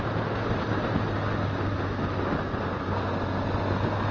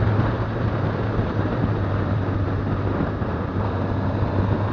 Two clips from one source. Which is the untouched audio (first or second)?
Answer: first